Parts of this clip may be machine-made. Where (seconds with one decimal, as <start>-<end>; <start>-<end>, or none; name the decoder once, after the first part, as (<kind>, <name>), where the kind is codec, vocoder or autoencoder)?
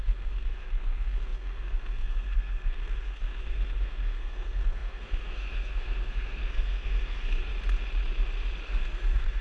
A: 0.0-7.5 (codec, SNAC); 8.7-9.4